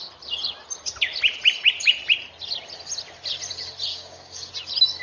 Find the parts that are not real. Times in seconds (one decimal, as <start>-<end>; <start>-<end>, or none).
3.9-4.5